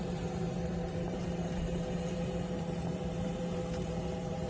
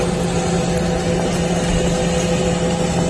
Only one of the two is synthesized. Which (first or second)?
first